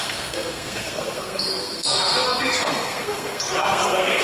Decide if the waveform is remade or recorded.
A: remade